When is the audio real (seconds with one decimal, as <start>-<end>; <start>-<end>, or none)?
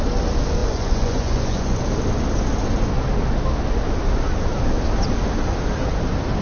0.0-0.6; 1.8-6.4